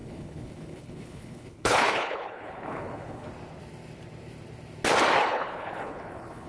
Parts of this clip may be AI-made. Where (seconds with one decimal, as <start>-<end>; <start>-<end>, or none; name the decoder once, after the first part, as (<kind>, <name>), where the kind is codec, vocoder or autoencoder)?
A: 0.0-3.3 (codec, HILCodec); 5.2-6.5